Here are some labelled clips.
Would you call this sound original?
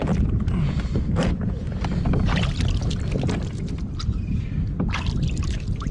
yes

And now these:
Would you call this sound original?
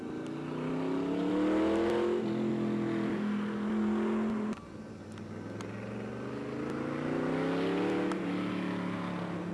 yes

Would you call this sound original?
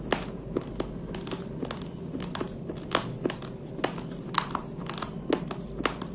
yes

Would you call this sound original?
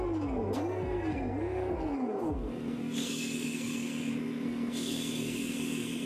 no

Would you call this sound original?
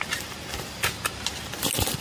yes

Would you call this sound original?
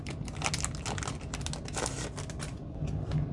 yes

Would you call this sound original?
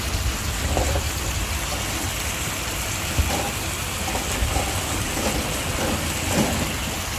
yes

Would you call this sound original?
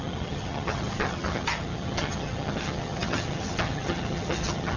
no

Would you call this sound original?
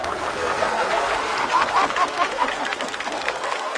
no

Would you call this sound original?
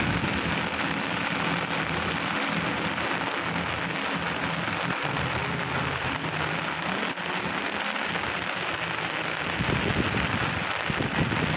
yes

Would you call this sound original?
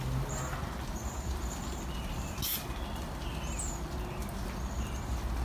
yes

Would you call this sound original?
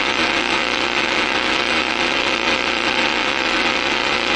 no